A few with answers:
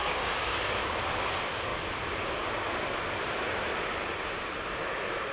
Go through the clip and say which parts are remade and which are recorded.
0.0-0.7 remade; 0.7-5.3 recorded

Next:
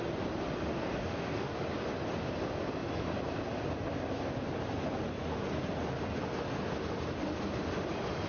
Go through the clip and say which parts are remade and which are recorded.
0.0-0.7 recorded; 0.7-1.6 remade; 1.6-8.3 recorded

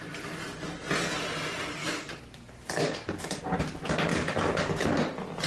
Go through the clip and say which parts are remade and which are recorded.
0.0-1.8 recorded; 1.8-3.4 remade; 3.4-4.1 recorded; 4.1-4.9 remade; 4.9-5.5 recorded

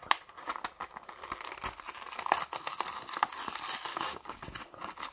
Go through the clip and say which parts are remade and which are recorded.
0.0-3.9 recorded; 3.9-4.4 remade; 4.4-5.1 recorded

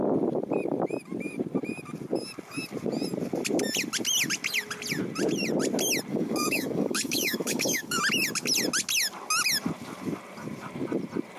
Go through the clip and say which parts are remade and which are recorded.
0.0-6.1 recorded; 6.1-8.0 remade; 8.0-11.4 recorded

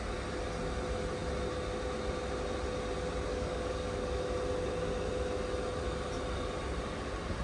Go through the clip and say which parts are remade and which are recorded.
0.0-3.3 recorded; 3.3-4.2 remade; 4.2-7.4 recorded